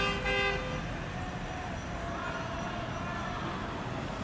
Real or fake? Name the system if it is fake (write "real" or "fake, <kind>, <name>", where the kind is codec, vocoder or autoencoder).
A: real